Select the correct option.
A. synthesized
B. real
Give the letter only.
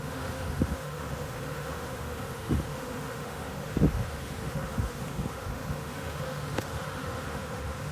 A